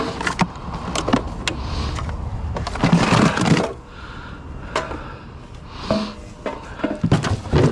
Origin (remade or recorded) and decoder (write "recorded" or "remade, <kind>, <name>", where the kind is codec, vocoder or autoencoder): recorded